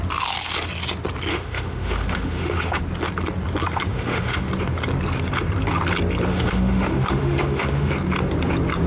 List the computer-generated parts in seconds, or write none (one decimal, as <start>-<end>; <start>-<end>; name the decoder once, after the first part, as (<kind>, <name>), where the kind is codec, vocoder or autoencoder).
1.3-2.8 (autoencoder, DAC-VAE); 3.9-4.5; 6.3-7.9